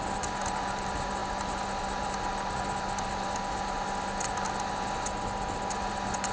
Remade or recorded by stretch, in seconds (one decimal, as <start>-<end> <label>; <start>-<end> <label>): 0.0-6.3 recorded